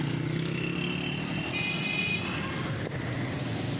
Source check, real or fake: real